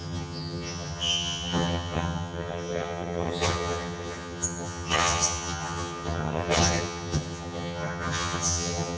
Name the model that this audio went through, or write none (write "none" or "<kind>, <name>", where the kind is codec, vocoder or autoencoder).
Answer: vocoder, HiFi-GAN